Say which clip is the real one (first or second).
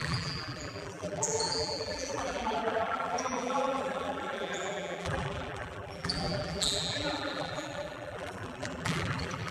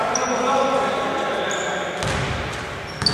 second